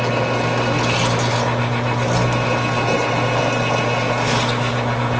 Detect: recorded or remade recorded